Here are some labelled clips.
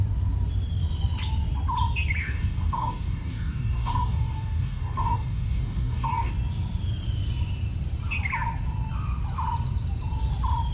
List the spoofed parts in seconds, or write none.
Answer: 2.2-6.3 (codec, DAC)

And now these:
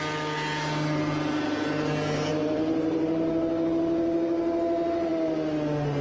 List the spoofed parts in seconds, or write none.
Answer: 2.3-3.3 (vocoder, BigVGAN v2)

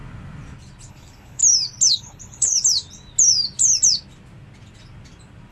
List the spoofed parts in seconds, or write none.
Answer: 0.9-1.4 (codec, HILCodec); 1.9-2.5

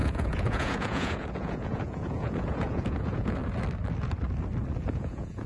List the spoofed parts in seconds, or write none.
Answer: 0.0-3.4 (vocoder, Vocos); 4.8-5.5

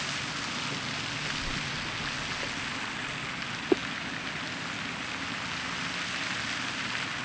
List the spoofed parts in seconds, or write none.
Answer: none

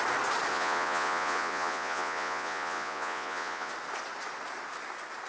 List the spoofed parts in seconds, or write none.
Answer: 0.5-3.7 (vocoder, Vocos)

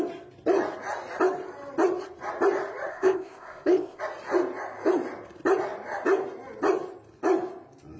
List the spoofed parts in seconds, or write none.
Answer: 2.9-4.0 (codec, ZipCodec)